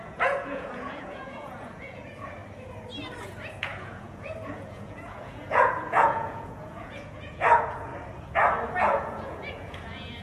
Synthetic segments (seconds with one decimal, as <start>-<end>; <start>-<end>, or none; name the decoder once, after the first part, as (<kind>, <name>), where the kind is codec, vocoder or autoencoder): 0.0-2.4 (vocoder, Vocos); 3.2-7.9; 8.8-10.2